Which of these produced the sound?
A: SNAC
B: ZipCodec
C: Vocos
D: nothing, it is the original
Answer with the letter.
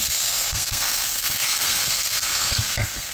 A